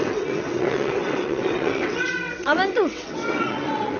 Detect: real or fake fake